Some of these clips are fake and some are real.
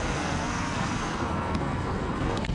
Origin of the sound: fake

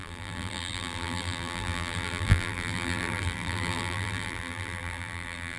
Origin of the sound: fake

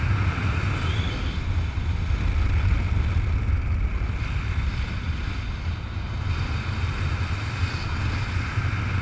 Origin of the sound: real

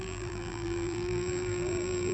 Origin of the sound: fake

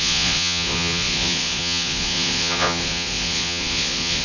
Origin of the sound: fake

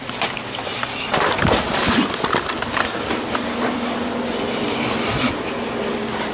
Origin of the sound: fake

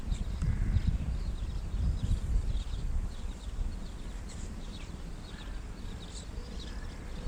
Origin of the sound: real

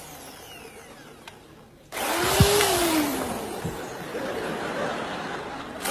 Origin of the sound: fake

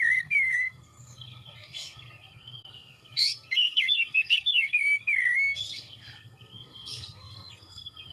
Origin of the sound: fake